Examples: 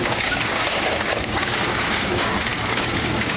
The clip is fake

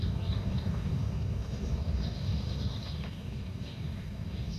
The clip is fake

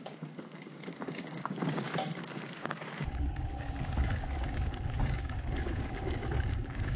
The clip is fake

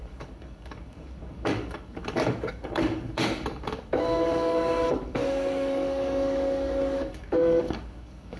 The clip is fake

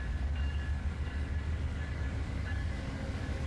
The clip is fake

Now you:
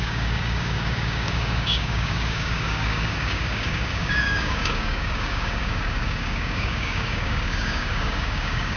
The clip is fake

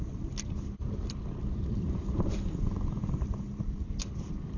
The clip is real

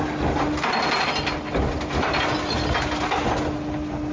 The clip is real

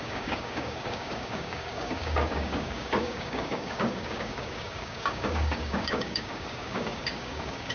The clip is fake